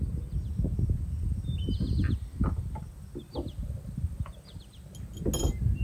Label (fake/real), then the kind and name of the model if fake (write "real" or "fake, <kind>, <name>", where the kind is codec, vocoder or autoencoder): real